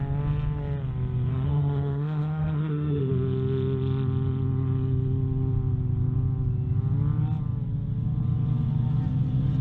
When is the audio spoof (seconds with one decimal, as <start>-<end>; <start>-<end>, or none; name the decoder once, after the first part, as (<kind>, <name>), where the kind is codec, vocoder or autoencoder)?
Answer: 1.3-3.1 (autoencoder, DAC-VAE)